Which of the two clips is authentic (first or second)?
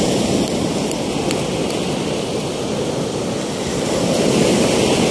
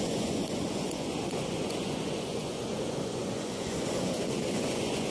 first